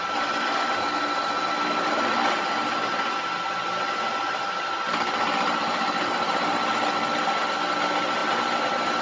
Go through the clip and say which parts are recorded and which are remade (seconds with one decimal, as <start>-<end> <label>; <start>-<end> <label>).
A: 0.0-9.0 recorded